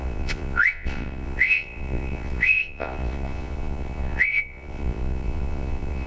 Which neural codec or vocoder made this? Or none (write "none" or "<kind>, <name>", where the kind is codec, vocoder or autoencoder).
vocoder, Vocos